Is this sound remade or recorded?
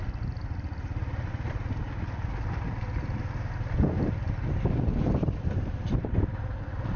recorded